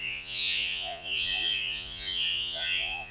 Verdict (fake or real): fake